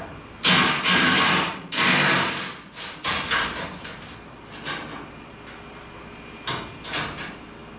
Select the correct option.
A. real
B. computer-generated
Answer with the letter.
A